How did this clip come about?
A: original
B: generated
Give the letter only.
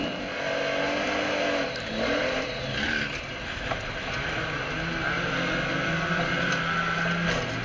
A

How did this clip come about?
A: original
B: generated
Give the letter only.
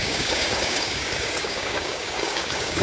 B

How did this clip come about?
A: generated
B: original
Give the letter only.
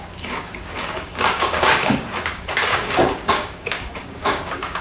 A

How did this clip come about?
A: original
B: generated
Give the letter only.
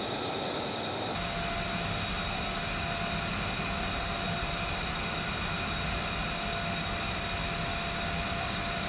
A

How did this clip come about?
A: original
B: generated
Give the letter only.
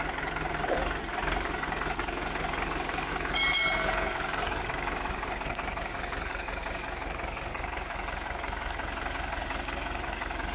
B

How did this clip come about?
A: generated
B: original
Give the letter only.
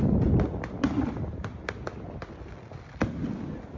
B